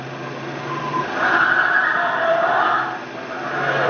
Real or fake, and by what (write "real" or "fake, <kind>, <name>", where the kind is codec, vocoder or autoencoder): real